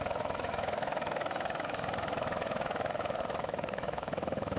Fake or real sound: fake